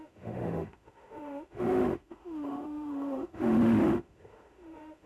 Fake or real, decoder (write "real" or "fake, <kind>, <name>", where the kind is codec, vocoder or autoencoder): fake, autoencoder, DAC-VAE